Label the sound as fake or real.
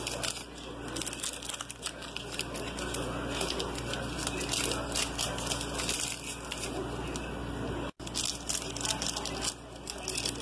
real